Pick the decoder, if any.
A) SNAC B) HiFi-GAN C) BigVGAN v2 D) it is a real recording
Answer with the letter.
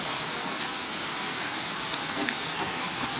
A